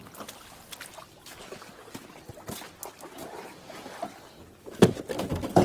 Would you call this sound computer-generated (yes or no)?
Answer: no